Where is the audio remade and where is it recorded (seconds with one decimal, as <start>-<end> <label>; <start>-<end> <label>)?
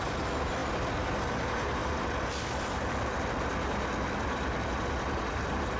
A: 0.0-5.8 recorded